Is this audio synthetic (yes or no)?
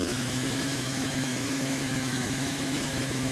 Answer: yes